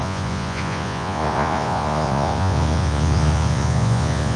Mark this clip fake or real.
fake